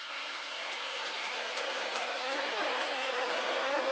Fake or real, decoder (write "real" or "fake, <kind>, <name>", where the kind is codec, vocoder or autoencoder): fake, codec, SNAC